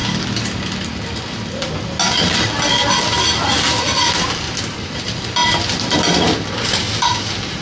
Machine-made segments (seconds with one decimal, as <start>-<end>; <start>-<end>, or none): 4.6-7.6